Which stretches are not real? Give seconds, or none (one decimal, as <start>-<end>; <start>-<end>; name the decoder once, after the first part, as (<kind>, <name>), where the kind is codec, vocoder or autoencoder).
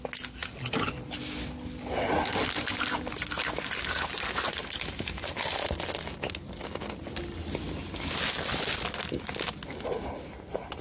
none